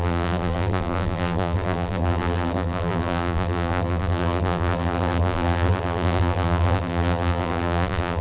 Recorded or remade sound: remade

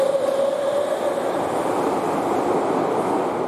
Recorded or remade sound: recorded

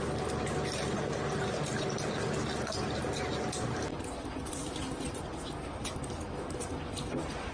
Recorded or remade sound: recorded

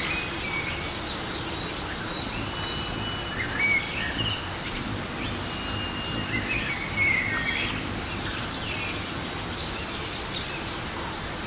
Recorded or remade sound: recorded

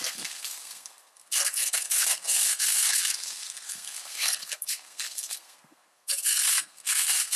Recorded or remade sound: remade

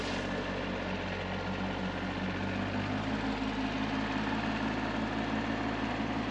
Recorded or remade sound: recorded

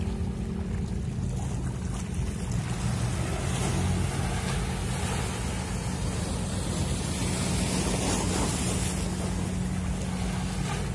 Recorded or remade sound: recorded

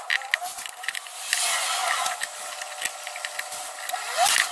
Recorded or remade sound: recorded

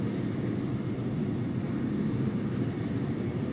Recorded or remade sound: recorded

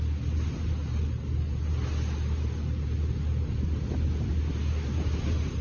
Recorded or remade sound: recorded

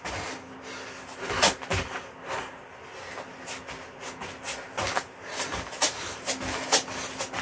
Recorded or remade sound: recorded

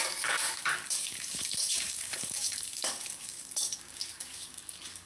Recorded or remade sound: remade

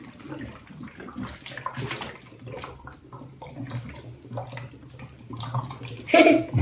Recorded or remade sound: recorded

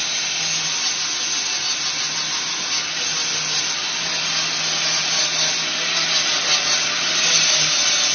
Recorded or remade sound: recorded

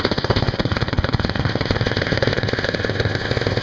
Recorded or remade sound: remade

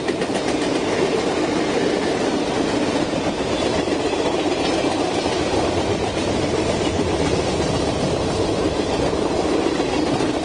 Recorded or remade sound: remade